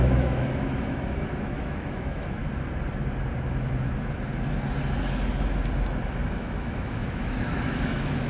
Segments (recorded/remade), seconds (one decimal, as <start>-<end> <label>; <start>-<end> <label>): 0.0-2.4 remade; 2.4-6.3 recorded; 6.3-8.3 remade